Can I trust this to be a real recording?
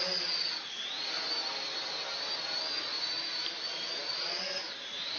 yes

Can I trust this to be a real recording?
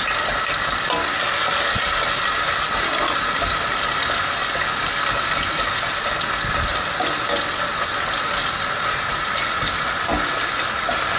yes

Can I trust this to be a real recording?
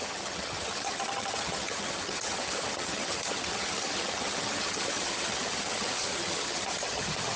no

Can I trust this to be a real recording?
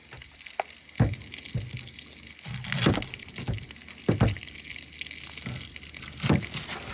yes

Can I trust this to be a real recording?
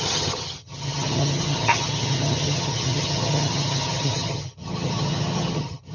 no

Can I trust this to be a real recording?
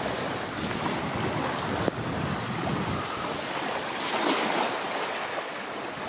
yes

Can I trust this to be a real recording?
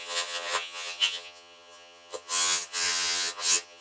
no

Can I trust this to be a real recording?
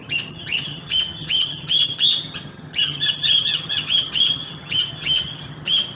no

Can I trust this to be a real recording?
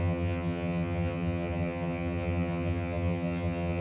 no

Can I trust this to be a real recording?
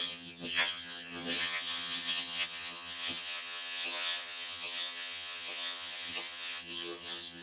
no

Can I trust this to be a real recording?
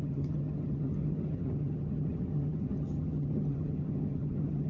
no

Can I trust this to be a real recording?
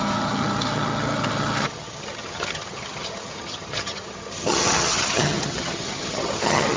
no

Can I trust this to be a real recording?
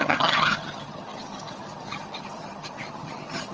no